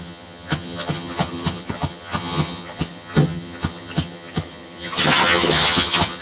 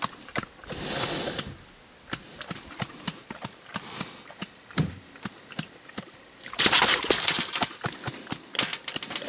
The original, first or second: second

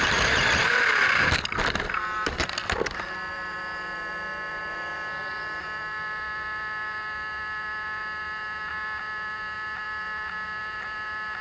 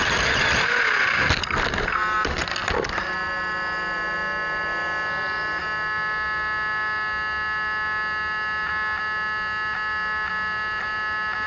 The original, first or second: second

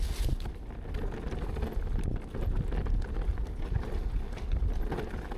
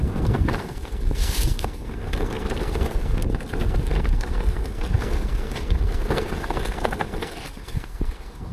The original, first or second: first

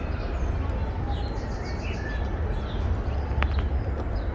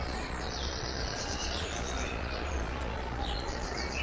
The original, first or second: first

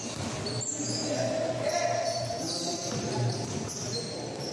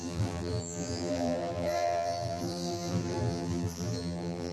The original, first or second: first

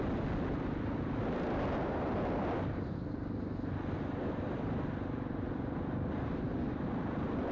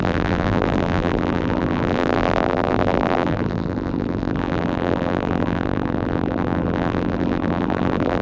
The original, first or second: first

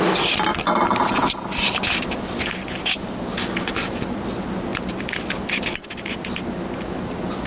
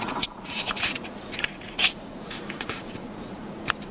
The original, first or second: first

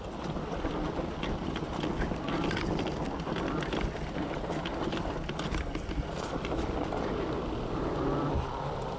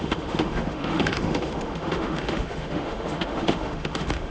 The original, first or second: first